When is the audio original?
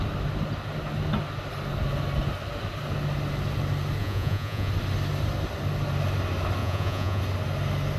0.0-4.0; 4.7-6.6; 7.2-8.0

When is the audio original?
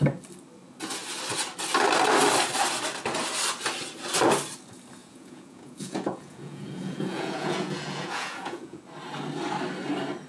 0.0-5.0; 8.8-10.3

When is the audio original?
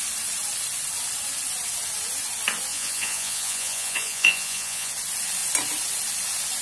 0.0-2.7; 4.9-6.6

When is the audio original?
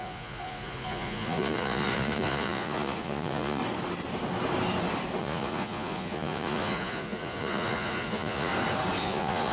3.6-5.2; 8.5-9.0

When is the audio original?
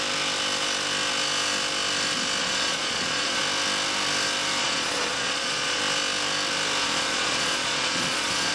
0.0-2.4; 3.4-4.6; 5.8-6.8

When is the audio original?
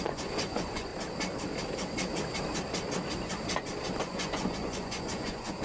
0.9-4.0